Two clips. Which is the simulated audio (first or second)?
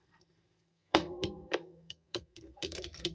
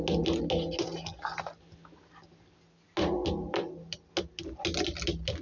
first